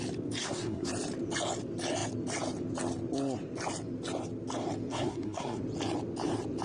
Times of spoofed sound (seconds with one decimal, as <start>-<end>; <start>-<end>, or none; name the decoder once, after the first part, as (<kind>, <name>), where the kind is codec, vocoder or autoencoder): 0.4-0.9 (codec, SNAC); 4.9-5.6